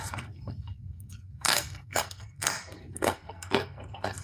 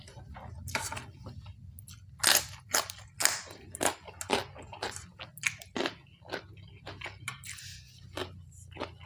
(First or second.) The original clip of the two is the second